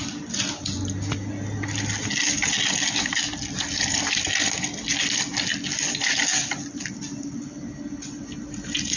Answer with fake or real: real